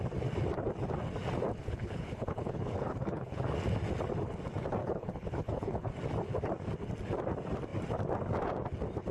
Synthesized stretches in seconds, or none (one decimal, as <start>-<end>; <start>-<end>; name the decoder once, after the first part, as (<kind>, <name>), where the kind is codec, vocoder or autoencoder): 1.6-3.4 (codec, HILCodec); 4.8-5.9